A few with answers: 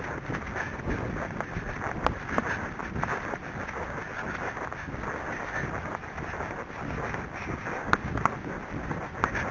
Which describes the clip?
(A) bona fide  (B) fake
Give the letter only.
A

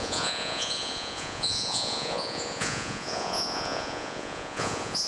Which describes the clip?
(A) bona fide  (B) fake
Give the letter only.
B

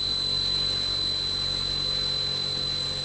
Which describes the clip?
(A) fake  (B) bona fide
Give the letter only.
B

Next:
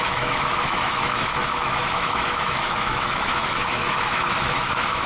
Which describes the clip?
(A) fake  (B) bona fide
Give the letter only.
A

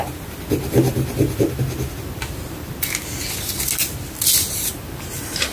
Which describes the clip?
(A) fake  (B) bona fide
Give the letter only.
B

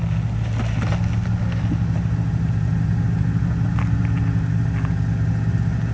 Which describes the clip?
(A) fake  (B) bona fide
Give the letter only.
B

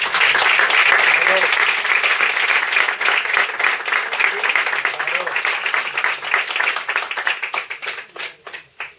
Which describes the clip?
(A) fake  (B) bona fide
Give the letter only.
B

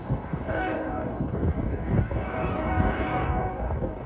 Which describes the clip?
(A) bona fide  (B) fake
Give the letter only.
B